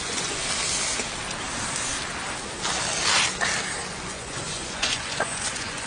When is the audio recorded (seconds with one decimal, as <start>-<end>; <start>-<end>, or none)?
0.4-3.9